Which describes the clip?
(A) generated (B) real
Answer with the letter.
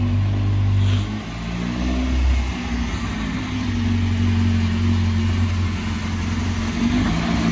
B